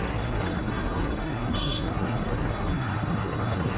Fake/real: fake